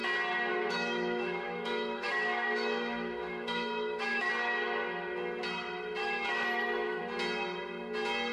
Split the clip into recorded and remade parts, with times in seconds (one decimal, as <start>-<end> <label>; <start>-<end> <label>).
0.0-0.5 recorded; 0.5-4.3 remade; 4.3-6.0 recorded; 6.0-7.0 remade; 7.0-8.3 recorded